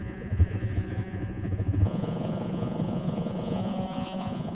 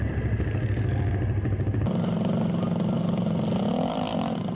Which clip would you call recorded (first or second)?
second